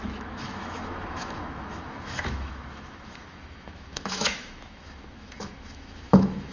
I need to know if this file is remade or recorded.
remade